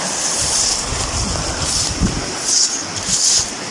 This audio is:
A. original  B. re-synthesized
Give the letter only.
A